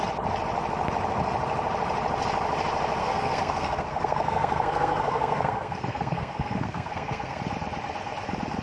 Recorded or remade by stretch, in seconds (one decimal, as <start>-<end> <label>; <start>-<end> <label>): 0.0-3.0 recorded; 3.0-7.4 remade; 7.4-8.6 recorded